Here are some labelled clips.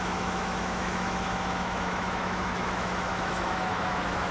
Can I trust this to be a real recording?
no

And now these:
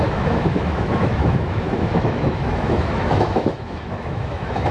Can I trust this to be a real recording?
no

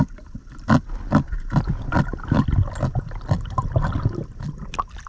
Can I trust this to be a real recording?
yes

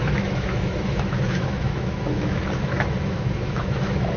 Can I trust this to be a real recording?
no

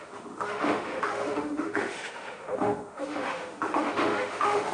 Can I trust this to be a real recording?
no